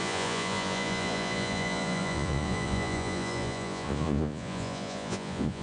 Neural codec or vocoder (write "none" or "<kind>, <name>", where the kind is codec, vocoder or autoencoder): vocoder, Vocos